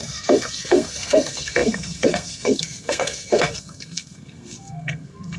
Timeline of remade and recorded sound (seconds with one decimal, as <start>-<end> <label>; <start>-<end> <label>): 0.0-5.4 remade